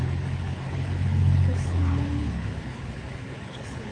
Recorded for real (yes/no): no